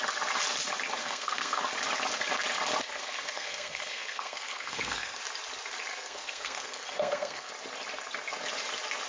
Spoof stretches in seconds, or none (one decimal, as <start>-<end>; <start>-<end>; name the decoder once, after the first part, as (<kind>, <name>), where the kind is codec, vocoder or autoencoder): 1.0-1.6 (codec, SNAC); 3.0-5.2; 5.9-7.5